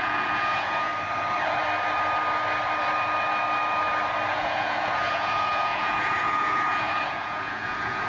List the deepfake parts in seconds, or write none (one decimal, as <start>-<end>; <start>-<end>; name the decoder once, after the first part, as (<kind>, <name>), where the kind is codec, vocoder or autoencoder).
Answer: 0.0-0.9 (vocoder, Vocos); 4.3-8.1